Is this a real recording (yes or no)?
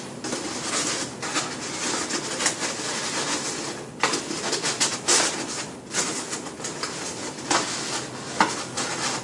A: yes